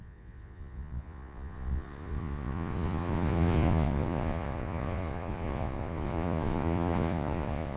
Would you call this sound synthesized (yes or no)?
yes